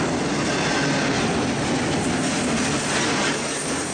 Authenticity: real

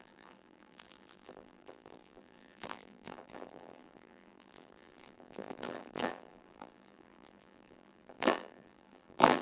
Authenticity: fake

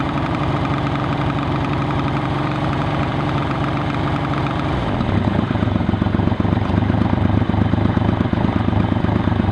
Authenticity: fake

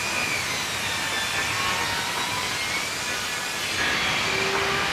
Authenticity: real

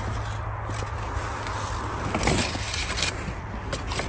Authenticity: real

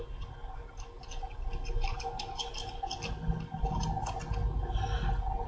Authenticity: real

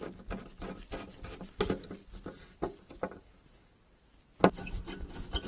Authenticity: real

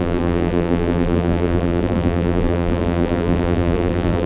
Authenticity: fake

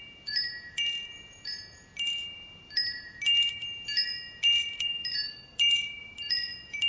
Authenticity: fake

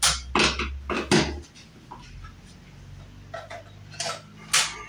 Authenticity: real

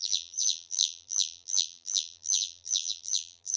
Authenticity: fake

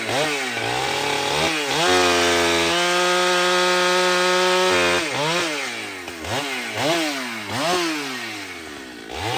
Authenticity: real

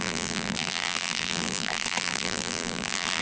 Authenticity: fake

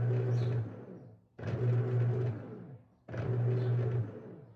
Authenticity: real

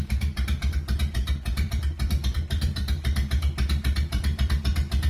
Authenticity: fake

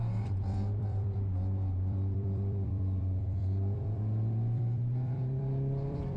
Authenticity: fake